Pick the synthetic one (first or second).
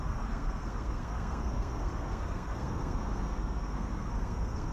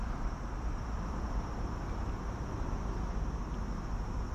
first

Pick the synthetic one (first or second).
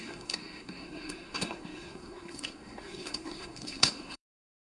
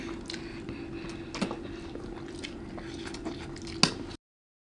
first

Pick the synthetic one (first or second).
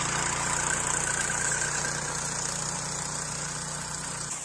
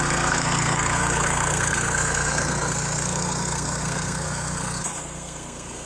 second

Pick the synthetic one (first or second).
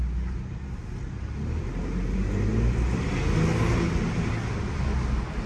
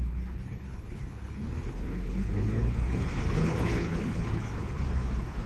second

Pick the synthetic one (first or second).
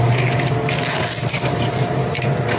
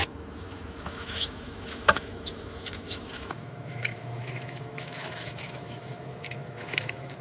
second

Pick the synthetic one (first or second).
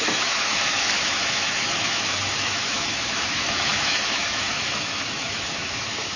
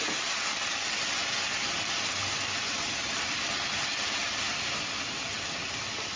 first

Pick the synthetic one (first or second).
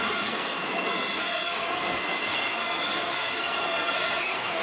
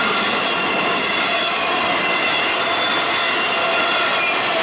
first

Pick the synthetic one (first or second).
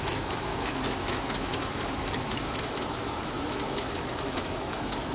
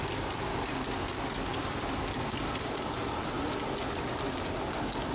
first